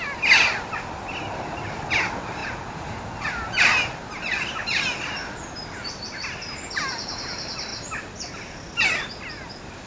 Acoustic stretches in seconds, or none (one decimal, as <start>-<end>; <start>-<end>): 0.0-9.9